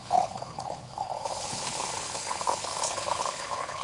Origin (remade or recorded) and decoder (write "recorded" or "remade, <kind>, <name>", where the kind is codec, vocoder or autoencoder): remade, codec, HILCodec